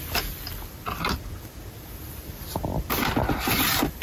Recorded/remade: recorded